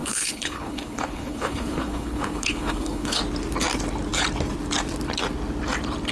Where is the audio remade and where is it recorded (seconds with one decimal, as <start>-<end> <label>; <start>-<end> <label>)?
0.0-3.2 remade; 3.2-6.1 recorded